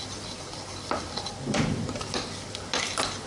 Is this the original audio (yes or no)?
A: yes